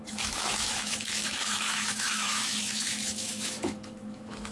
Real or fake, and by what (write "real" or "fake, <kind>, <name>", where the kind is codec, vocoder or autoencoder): fake, autoencoder, DAC-VAE